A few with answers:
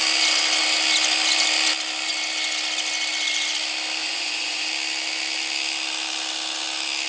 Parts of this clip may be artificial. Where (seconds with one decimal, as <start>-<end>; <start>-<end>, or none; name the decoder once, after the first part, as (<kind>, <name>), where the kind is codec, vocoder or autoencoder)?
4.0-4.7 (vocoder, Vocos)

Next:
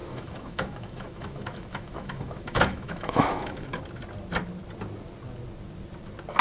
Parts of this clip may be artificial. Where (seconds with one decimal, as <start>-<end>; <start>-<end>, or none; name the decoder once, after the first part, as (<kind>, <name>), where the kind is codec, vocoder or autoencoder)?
0.0-3.8 (autoencoder, DAC-VAE)

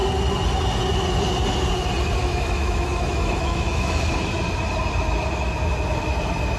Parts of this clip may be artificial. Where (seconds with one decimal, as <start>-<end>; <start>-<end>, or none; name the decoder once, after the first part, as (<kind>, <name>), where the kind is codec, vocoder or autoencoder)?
2.2-4.1 (autoencoder, DAC-VAE)

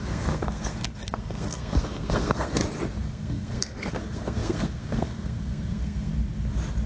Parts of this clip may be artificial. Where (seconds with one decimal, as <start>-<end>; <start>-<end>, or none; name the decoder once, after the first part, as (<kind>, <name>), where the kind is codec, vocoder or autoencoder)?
0.0-2.6 (codec, SNAC); 3.1-6.1